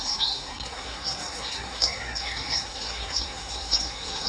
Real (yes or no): no